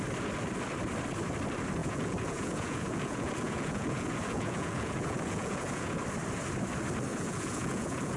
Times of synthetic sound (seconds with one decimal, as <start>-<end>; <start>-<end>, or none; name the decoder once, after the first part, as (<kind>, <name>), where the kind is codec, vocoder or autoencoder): 1.8-6.0 (vocoder, Vocos); 7.1-8.2